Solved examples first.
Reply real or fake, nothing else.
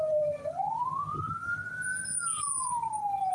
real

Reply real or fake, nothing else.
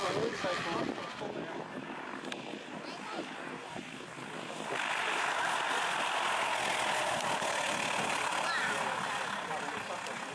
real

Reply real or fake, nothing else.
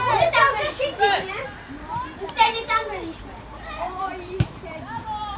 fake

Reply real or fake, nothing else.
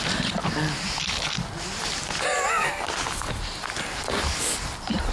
real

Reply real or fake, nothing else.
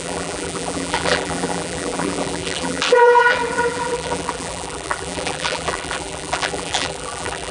fake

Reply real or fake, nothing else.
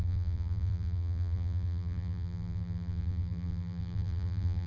fake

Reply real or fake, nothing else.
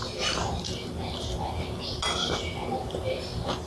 real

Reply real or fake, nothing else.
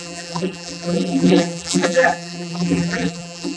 fake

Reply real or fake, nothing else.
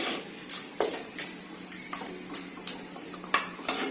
real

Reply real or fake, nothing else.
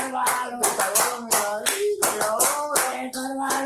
real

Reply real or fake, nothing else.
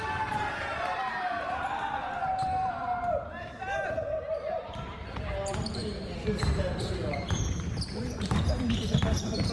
fake